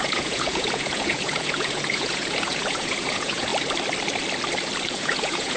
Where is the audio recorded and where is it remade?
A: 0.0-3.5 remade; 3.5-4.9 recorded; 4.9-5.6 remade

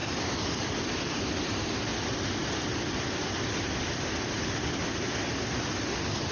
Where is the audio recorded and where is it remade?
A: 0.0-6.3 recorded

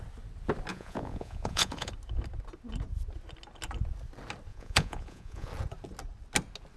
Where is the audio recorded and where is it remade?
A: 0.0-0.7 recorded; 0.7-1.9 remade; 1.9-4.5 recorded; 4.5-5.5 remade; 5.5-6.8 recorded

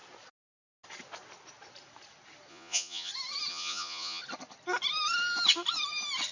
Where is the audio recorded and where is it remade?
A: 0.0-2.5 recorded; 2.5-3.1 remade; 3.1-3.5 recorded; 3.5-4.2 remade; 4.2-6.3 recorded

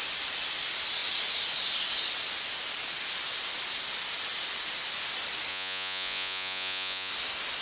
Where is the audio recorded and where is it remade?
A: 0.0-5.5 recorded; 5.5-7.1 remade; 7.1-7.6 recorded

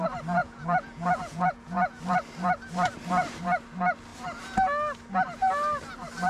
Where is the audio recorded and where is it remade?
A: 0.0-0.4 recorded; 0.4-2.0 remade; 2.0-6.3 recorded